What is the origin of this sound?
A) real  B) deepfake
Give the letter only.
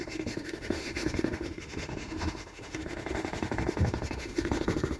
B